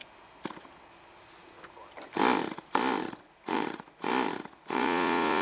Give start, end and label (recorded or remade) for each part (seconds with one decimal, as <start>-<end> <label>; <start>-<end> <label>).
0.0-3.2 recorded; 3.2-4.1 remade; 4.1-4.6 recorded; 4.6-5.4 remade